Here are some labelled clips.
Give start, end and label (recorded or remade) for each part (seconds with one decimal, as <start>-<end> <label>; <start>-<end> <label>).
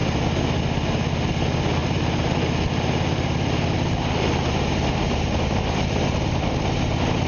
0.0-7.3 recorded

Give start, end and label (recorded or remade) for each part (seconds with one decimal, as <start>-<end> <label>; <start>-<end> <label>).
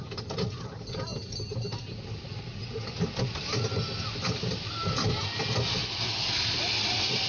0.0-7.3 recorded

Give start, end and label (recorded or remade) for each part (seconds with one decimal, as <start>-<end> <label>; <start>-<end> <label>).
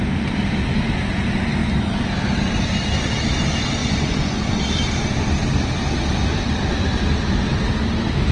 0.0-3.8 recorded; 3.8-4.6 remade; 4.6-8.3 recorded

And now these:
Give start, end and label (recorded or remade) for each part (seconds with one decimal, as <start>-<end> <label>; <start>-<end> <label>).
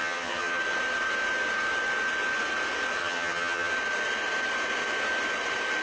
0.0-0.6 remade; 0.6-3.0 recorded; 3.0-3.7 remade; 3.7-5.8 recorded